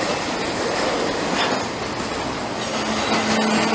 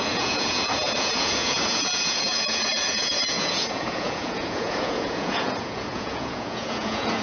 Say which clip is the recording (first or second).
first